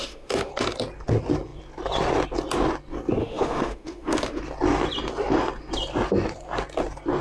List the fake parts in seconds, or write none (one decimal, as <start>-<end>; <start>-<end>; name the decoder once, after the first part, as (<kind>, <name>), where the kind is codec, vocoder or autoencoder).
0.0-0.5 (autoencoder, DAC-VAE); 3.2-4.4